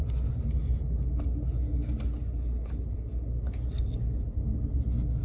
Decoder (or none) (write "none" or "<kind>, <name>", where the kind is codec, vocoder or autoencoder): none